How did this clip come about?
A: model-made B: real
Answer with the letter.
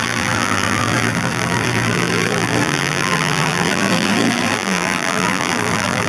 A